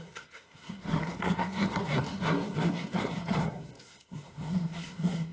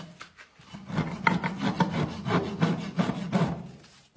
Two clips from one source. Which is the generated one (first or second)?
first